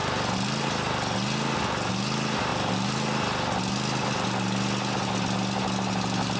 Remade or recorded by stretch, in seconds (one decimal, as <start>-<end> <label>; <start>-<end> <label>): 0.0-6.4 recorded